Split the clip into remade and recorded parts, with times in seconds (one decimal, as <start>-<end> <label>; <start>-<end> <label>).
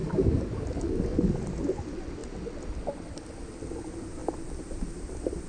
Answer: 0.0-1.4 remade; 1.4-5.5 recorded